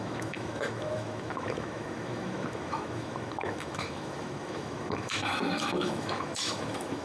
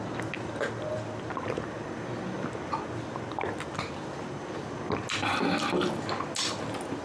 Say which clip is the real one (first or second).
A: second